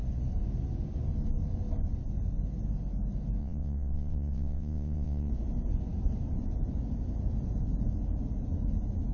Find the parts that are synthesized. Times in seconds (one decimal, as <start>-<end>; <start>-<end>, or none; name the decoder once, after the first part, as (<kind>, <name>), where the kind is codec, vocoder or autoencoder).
3.4-5.3 (vocoder, WaveNeXt)